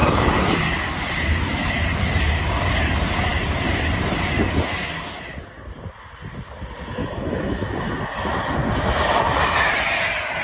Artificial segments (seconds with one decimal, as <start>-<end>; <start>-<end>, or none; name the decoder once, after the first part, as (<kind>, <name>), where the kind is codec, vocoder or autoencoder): 7.0-8.0 (autoencoder, DAC-VAE)